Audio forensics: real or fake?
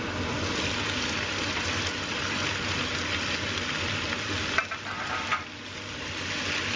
real